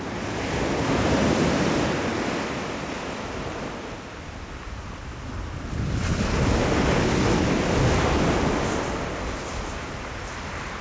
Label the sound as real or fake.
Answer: real